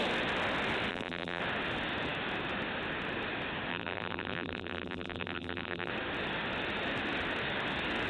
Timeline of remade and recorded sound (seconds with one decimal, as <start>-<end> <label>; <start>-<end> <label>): 0.0-0.9 recorded; 0.9-1.4 remade; 1.4-3.7 recorded; 3.7-5.9 remade; 5.9-8.1 recorded